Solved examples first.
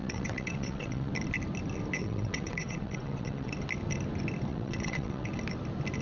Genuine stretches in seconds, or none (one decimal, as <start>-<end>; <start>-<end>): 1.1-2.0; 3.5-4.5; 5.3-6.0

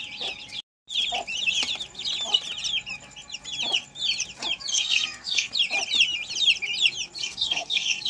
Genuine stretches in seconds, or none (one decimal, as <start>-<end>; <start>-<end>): 0.0-4.7; 5.5-7.2

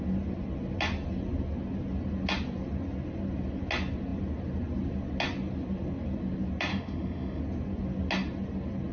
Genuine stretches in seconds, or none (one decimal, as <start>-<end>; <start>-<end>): 0.0-6.7; 7.4-8.9

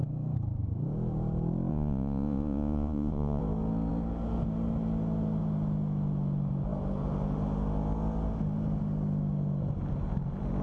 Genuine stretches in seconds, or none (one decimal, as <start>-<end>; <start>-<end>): 0.0-1.7; 3.4-10.6

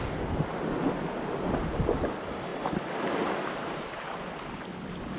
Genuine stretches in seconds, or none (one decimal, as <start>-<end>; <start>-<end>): 0.0-5.2

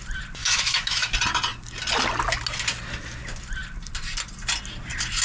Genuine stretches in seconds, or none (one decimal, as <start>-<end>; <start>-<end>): 0.0-0.4; 1.1-5.2